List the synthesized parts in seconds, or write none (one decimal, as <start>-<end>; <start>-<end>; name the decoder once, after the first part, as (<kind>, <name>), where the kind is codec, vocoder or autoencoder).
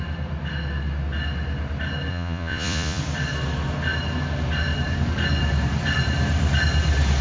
2.1-3.0 (vocoder, Vocos)